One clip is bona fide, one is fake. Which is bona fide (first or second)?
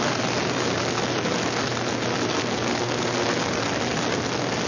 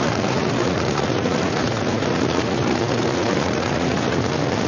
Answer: first